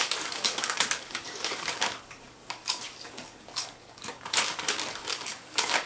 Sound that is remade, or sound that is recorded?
remade